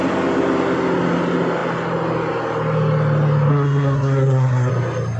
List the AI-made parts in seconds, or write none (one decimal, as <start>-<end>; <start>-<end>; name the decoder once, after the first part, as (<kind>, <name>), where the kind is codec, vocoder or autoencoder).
3.5-4.7 (codec, SNAC)